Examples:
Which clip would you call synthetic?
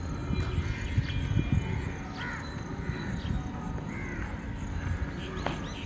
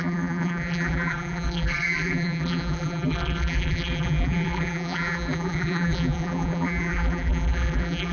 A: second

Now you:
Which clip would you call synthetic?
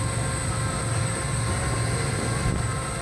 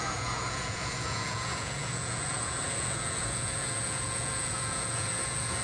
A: second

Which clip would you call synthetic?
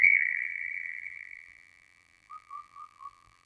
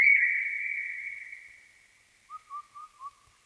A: first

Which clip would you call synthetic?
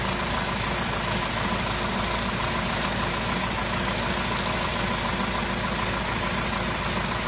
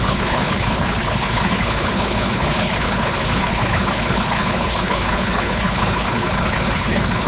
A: second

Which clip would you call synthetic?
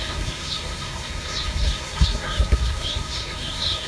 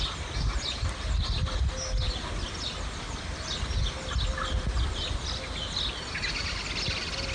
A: first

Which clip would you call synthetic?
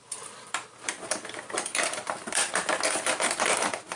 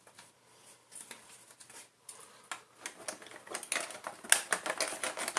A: first